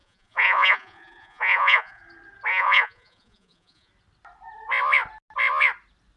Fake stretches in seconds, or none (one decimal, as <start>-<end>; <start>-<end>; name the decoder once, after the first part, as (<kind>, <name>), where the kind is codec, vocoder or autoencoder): 0.0-2.0 (vocoder, Vocos); 2.5-3.9